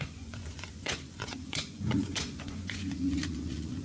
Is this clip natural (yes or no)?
no